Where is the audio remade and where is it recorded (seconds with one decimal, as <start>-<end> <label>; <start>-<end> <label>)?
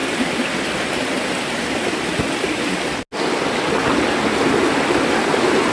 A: 0.0-5.7 recorded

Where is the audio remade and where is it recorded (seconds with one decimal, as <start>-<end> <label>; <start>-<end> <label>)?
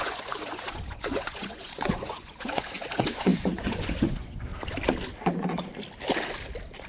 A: 0.0-4.5 remade; 4.5-5.2 recorded; 5.2-5.7 remade; 5.7-6.9 recorded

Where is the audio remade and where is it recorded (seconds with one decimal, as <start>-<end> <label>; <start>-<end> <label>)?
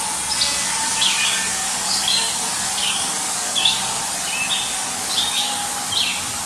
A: 0.0-0.7 recorded; 0.7-4.0 remade; 4.0-4.7 recorded; 4.7-5.9 remade; 5.9-6.5 recorded